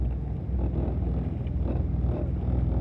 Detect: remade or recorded recorded